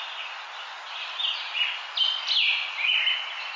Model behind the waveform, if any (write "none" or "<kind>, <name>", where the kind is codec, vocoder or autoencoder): none